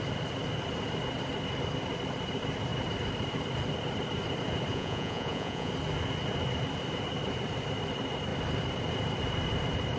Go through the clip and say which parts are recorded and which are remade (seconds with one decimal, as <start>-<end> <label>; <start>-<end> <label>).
0.0-4.7 recorded; 4.7-5.7 remade; 5.7-10.0 recorded